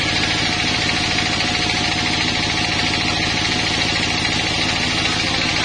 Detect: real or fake real